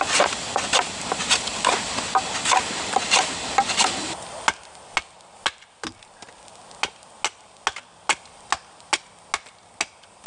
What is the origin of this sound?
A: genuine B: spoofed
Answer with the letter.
A